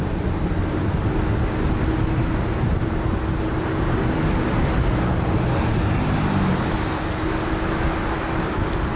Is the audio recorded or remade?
recorded